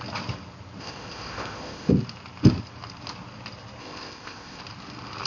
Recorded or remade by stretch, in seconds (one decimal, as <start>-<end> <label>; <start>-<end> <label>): 0.0-0.8 recorded; 0.8-1.9 remade; 1.9-3.8 recorded; 3.8-4.6 remade; 4.6-5.3 recorded